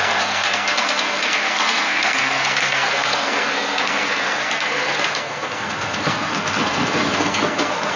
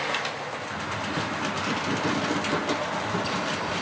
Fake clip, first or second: first